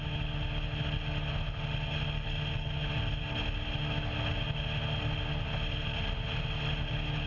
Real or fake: real